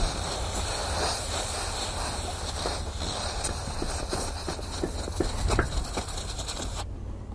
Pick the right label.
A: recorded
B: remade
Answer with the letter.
A